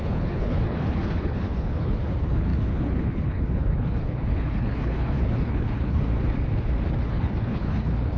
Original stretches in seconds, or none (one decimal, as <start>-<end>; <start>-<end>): 6.1-7.0